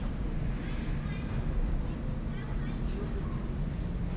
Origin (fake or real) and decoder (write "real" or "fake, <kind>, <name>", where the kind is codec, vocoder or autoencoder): real